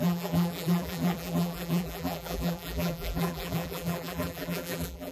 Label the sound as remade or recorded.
remade